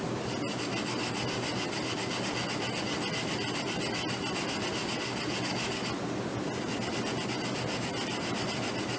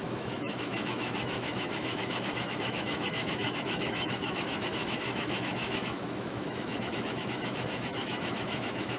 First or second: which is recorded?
first